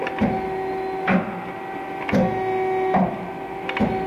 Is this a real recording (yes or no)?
yes